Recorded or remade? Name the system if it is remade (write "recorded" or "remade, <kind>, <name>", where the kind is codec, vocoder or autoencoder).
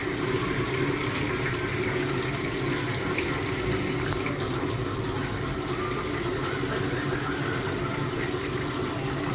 recorded